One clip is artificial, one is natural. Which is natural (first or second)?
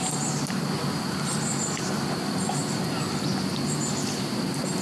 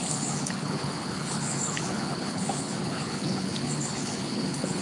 first